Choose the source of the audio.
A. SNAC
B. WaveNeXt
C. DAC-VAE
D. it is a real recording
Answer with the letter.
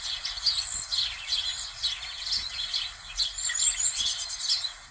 D